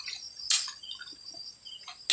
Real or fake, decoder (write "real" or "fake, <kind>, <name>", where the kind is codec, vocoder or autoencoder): real